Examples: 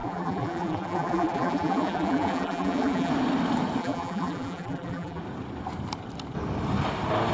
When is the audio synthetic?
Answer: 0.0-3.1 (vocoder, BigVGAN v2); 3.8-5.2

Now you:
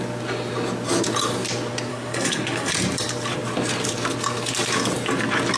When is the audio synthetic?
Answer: 1.9-2.7 (codec, SNAC)

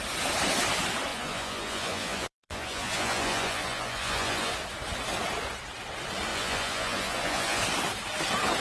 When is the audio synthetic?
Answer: 1.1-4.5 (vocoder, Vocos); 6.3-7.6

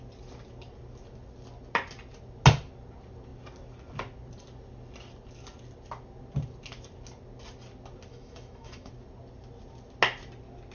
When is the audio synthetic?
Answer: 8.1-8.9 (autoencoder, DAC-VAE)

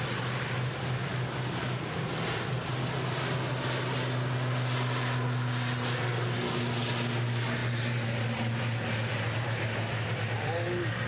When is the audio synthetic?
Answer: none

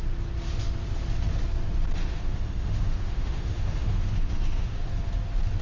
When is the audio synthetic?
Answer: 2.0-4.9 (autoencoder, DAC-VAE)